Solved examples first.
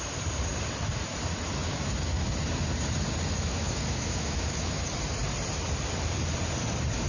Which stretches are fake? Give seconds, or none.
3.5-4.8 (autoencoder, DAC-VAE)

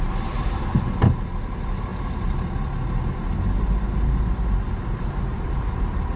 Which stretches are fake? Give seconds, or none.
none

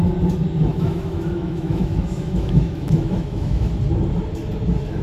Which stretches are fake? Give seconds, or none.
0.7-3.7 (autoencoder, DAC-VAE)

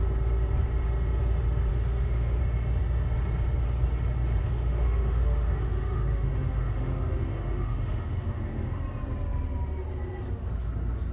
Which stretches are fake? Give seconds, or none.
1.7-2.4 (autoencoder, DAC-VAE); 4.4-8.8